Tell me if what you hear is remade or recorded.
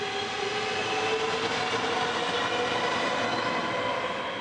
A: recorded